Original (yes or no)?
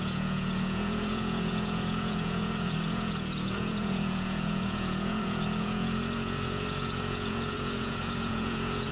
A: no